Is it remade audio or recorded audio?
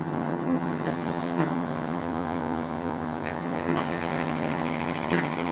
remade